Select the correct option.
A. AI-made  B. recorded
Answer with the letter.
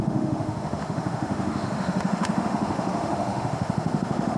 A